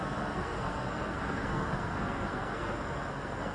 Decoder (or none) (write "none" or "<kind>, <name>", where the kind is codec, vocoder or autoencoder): codec, SNAC